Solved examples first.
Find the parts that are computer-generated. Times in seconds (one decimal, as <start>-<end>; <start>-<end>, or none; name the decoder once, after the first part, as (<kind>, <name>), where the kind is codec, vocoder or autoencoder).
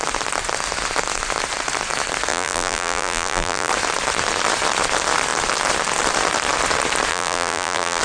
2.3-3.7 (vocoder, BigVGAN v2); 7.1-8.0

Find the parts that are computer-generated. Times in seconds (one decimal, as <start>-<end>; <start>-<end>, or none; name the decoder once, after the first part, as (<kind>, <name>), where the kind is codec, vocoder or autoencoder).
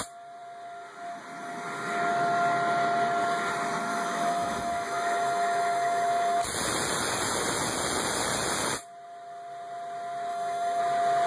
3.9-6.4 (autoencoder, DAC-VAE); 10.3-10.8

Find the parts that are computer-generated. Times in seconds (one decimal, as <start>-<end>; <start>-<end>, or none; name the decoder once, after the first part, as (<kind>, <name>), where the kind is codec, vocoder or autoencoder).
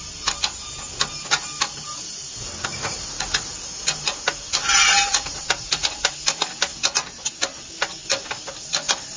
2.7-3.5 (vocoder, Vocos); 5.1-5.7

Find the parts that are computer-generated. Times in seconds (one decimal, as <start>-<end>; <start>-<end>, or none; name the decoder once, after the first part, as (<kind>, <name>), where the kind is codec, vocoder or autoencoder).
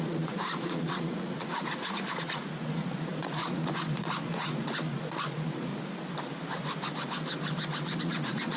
0.0-5.7 (vocoder, Vocos); 8.0-8.6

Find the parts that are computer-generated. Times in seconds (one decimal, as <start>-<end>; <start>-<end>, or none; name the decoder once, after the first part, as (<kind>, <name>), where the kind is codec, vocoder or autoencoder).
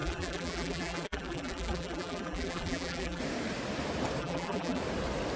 0.0-3.2 (vocoder, BigVGAN v2); 4.2-4.8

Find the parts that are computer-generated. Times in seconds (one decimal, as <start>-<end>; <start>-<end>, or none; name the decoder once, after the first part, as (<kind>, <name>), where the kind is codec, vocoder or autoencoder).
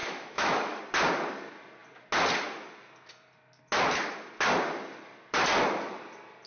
0.0-0.8 (autoencoder, DAC-VAE)